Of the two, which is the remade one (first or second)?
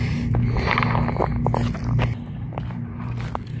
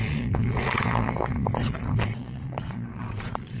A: second